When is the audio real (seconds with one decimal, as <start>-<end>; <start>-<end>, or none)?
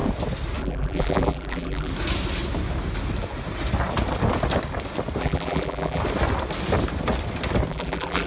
0.0-0.6; 1.9-5.2; 6.0-7.7